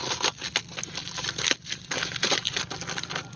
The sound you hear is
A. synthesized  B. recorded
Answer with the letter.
B